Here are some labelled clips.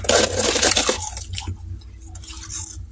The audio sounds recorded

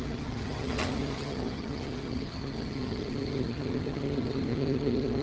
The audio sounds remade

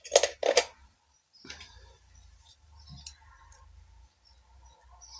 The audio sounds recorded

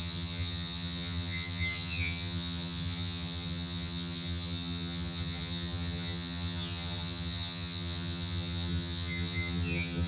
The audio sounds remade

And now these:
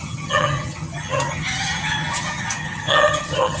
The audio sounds remade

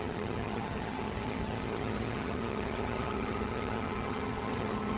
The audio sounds remade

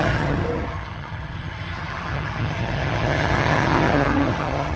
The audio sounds remade